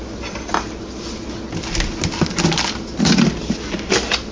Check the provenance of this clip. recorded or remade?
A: recorded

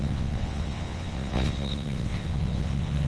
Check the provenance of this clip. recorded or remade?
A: remade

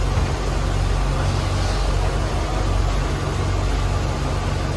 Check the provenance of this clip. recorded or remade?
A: recorded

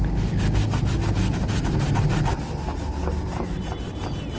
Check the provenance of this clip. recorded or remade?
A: recorded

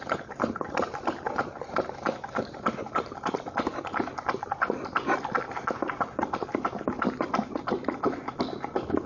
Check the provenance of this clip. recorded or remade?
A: recorded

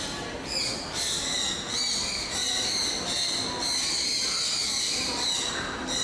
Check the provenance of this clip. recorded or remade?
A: recorded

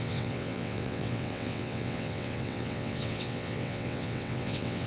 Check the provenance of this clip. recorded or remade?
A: remade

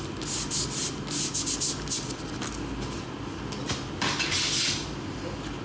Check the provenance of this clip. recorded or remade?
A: recorded